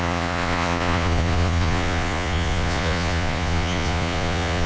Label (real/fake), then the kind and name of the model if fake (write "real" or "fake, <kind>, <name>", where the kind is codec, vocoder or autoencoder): fake, vocoder, Vocos